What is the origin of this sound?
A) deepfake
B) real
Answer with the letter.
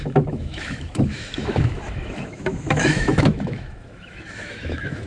A